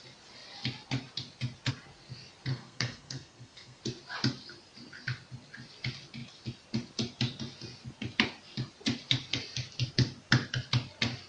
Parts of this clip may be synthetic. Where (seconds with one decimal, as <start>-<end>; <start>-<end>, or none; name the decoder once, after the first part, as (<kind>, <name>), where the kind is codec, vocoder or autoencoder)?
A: 2.5-3.8 (codec, SNAC)